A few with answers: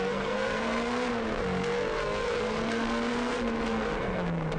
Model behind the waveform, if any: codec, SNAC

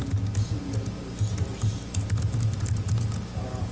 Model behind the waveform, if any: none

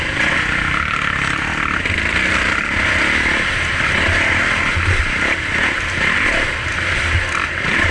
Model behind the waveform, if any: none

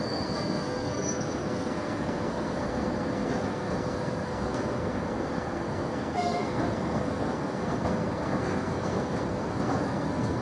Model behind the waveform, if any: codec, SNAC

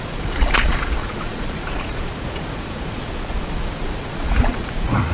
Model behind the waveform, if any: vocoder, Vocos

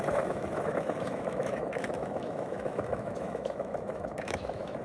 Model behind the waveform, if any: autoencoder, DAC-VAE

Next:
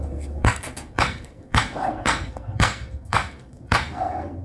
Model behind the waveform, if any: codec, SNAC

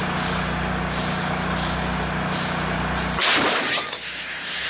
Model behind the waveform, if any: none